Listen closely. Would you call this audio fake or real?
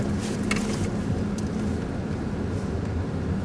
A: real